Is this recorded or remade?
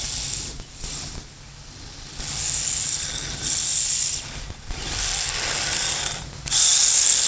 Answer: recorded